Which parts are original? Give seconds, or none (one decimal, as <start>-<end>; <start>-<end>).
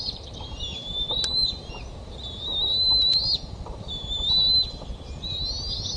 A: 0.0-6.0